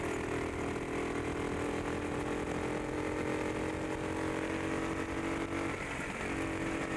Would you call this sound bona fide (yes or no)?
yes